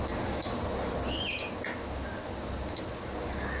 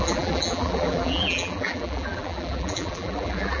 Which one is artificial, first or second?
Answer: second